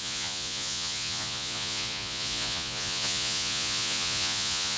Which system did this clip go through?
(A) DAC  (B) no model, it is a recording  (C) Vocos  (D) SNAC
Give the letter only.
C